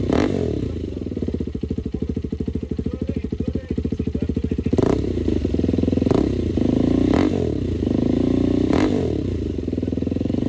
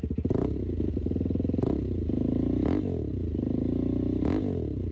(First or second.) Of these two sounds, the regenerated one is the first